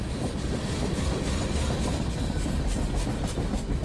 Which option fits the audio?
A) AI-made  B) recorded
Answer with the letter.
B